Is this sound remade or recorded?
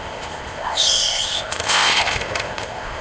remade